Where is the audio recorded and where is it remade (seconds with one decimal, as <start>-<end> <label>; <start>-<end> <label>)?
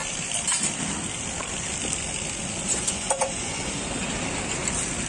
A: 0.0-2.7 recorded; 2.7-3.8 remade; 3.8-5.1 recorded